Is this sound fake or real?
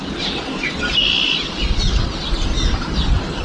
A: real